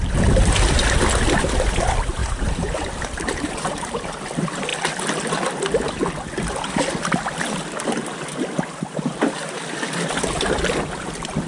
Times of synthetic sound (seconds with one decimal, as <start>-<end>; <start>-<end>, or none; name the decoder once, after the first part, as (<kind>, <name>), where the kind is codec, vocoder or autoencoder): 2.2-4.1 (vocoder, BigVGAN v2)